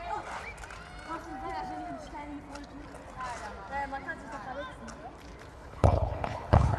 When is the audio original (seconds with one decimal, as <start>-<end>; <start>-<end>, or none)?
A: 0.0-5.5